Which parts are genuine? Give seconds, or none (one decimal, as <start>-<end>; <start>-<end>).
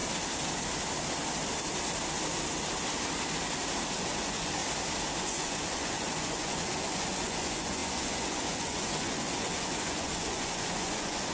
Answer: 0.0-4.0; 4.6-5.2